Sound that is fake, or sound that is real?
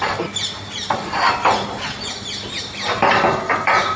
real